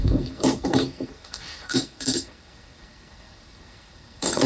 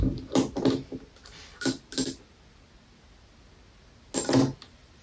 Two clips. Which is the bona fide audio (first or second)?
second